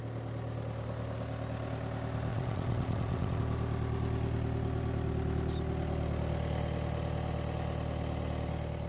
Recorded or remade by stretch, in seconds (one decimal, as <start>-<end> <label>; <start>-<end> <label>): 0.0-2.3 recorded; 2.3-3.4 remade; 3.4-8.9 recorded